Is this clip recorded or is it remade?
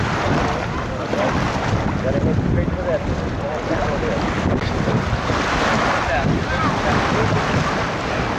recorded